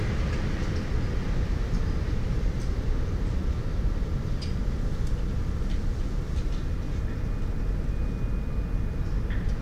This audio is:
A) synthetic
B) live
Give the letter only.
B